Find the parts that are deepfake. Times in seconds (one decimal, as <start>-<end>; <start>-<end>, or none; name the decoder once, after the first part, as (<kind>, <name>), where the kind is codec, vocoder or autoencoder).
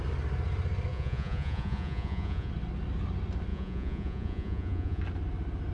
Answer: 0.9-2.5 (vocoder, Vocos); 3.5-5.0